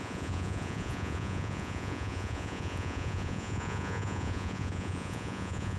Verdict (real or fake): fake